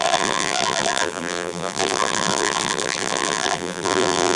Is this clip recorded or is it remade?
remade